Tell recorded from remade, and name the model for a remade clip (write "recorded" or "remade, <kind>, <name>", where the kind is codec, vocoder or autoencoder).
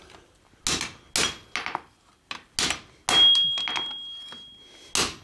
recorded